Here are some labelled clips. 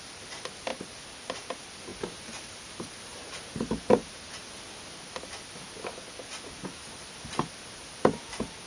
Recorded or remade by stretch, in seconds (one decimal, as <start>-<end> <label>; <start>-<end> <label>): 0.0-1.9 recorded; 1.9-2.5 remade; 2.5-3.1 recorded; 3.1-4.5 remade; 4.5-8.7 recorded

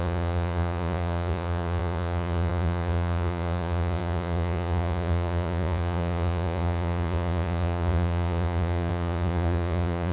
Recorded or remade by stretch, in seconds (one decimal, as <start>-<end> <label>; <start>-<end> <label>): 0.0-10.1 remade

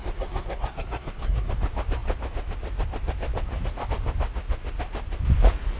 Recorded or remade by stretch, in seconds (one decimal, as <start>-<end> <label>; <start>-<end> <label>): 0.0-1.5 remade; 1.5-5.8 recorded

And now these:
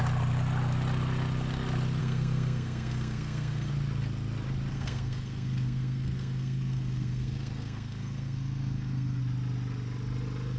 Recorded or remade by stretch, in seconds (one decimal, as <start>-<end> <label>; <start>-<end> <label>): 0.0-2.0 recorded; 2.0-3.7 remade; 3.7-4.7 recorded; 4.7-9.2 remade; 9.2-10.6 recorded

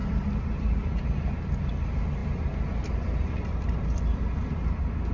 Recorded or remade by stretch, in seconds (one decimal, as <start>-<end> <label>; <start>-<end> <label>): 0.0-5.1 recorded

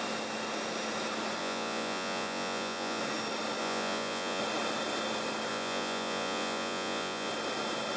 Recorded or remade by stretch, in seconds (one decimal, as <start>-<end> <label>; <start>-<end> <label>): 0.0-1.4 recorded; 1.4-3.0 remade; 3.0-3.6 recorded; 3.6-4.4 remade; 4.4-5.5 recorded; 5.5-7.3 remade; 7.3-8.0 recorded